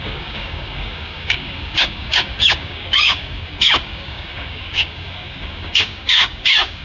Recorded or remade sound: remade